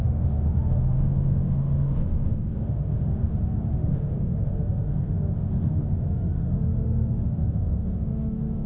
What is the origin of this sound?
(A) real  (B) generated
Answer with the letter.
B